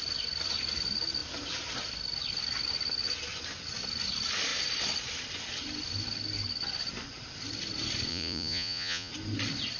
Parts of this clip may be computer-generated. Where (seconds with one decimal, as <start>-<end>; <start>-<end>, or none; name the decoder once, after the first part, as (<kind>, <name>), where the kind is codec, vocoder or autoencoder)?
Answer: 8.1-9.1 (vocoder, Vocos)